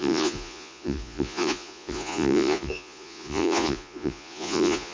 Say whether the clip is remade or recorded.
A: remade